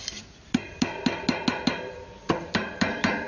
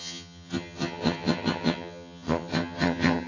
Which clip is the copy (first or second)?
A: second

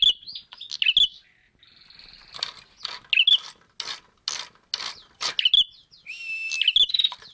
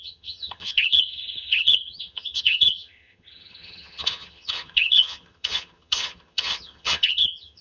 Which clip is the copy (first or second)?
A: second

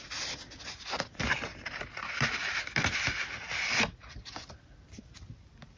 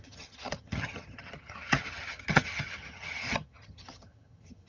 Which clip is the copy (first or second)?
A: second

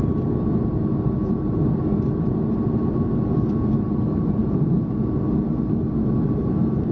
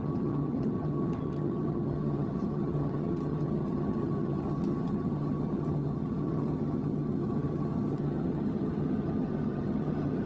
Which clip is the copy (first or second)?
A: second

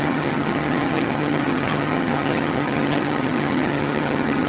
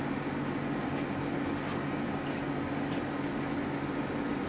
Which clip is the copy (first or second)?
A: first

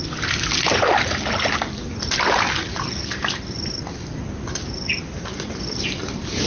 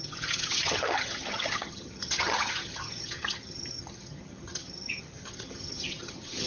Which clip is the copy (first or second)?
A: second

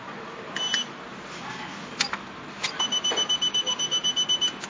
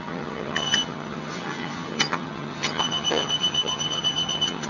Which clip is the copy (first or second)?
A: second